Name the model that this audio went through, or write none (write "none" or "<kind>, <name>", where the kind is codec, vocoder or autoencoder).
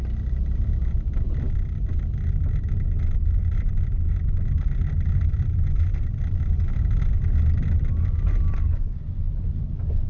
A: none